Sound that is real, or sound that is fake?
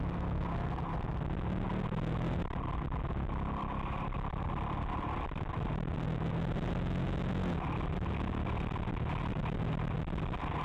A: real